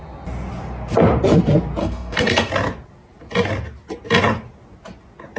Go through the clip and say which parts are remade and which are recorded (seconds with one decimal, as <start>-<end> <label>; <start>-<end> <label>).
0.0-1.8 recorded; 1.8-2.5 remade; 2.5-5.4 recorded